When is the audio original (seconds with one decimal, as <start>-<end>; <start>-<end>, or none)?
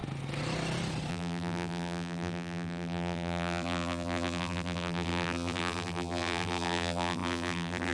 0.0-1.1